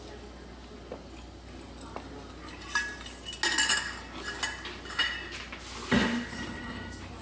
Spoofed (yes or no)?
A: no